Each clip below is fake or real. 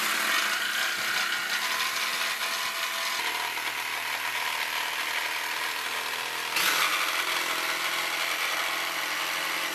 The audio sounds real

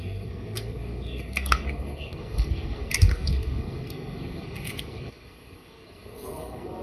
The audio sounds fake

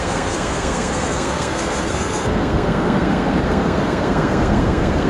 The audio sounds fake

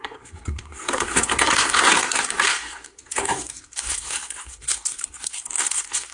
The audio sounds fake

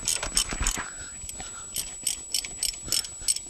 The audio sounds real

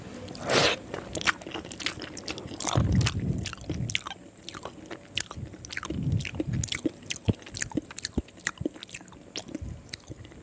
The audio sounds real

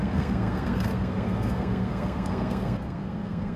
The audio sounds fake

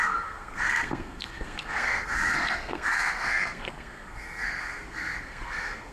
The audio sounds fake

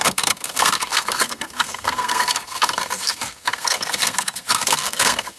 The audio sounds fake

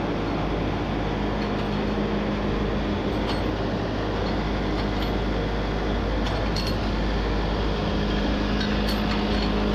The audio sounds real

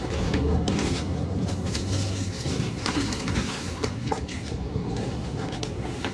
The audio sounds fake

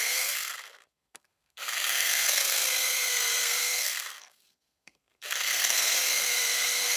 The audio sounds fake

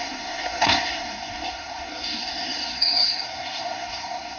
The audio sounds fake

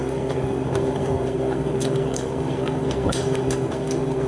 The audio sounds fake